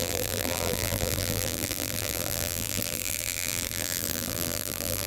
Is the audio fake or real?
fake